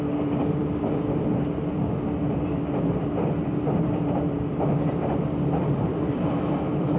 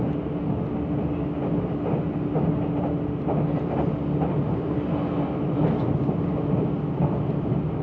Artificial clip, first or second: first